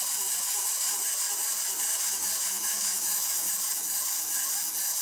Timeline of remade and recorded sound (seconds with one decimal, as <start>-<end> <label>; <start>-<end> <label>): 0.0-1.9 recorded; 1.9-3.5 remade; 3.5-5.0 recorded